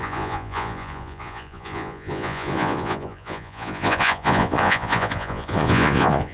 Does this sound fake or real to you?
fake